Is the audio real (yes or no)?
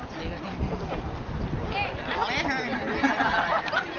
yes